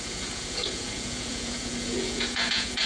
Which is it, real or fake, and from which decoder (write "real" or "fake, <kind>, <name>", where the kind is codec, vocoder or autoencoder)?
fake, vocoder, Vocos